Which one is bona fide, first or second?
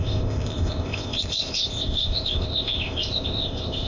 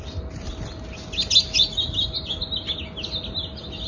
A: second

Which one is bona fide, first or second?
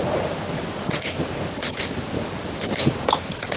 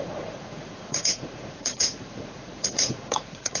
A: first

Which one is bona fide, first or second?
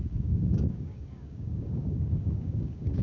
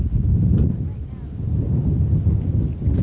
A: second